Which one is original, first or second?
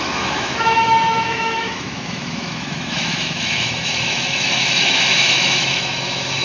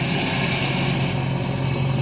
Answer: second